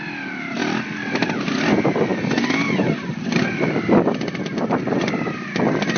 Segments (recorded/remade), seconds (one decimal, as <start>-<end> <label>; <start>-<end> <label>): 0.0-6.0 recorded

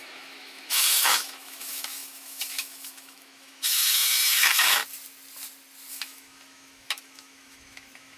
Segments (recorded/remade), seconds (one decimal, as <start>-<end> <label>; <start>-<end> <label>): 0.0-4.8 remade; 4.8-5.9 recorded; 5.9-8.2 remade

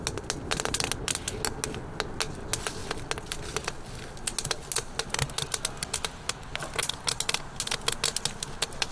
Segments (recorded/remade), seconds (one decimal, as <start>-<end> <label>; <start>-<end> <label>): 0.0-8.9 recorded